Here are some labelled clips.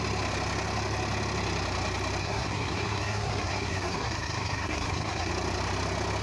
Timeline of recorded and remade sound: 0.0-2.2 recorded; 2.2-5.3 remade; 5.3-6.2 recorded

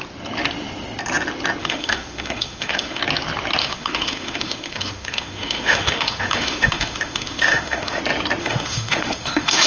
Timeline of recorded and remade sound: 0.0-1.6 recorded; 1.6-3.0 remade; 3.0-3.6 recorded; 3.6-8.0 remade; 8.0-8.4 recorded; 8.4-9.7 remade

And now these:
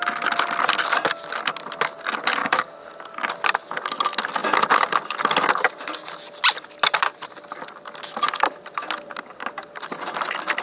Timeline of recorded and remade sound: 0.0-2.4 recorded; 2.4-2.9 remade; 2.9-10.6 recorded